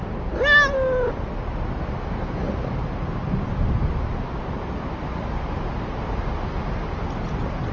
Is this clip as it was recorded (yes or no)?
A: yes